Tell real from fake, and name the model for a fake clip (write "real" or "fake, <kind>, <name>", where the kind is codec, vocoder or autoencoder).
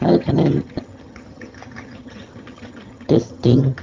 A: fake, vocoder, HiFi-GAN